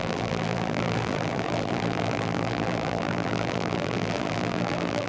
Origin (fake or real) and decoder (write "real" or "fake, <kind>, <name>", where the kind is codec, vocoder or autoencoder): fake, vocoder, BigVGAN v2